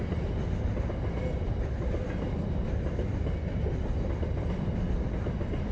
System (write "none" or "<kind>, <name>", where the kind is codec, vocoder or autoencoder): none